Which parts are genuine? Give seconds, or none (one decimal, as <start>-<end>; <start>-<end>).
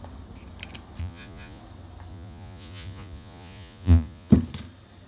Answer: 0.0-1.0; 1.6-2.1; 4.3-5.1